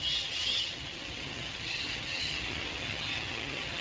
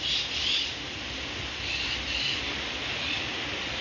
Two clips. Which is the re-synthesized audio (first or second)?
first